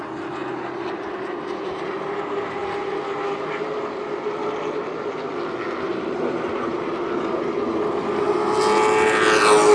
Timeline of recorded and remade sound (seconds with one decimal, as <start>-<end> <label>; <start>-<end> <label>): 0.0-0.4 recorded; 0.4-0.9 remade; 0.9-5.9 recorded; 5.9-6.7 remade; 6.7-9.7 recorded